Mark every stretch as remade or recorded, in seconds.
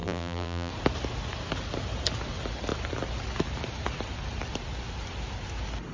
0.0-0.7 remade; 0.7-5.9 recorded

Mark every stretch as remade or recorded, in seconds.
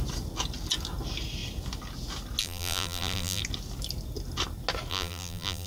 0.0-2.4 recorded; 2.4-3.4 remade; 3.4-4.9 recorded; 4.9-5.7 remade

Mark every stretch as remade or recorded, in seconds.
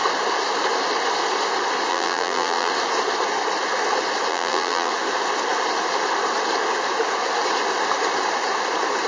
0.0-1.9 recorded; 1.9-2.7 remade; 2.7-4.3 recorded; 4.3-4.9 remade; 4.9-9.1 recorded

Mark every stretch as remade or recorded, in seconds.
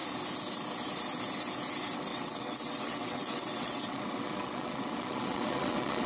0.0-2.1 recorded; 2.1-6.1 remade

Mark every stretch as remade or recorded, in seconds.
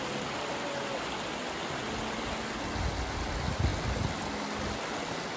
0.0-5.4 recorded